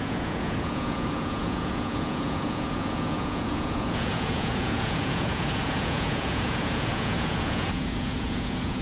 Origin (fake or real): fake